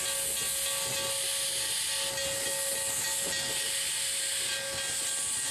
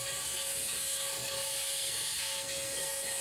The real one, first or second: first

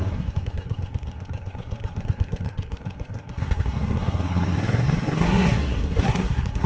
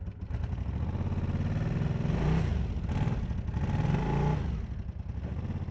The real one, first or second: second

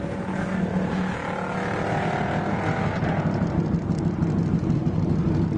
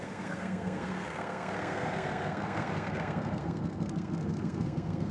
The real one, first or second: first